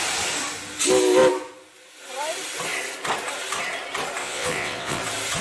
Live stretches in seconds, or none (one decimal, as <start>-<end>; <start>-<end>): 0.0-4.2; 5.0-5.4